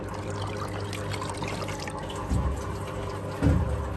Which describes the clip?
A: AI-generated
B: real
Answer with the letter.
B